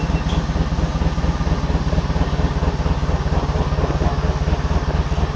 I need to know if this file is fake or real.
real